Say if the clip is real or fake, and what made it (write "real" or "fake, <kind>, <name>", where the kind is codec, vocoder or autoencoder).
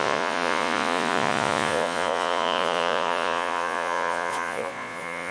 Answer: fake, vocoder, Vocos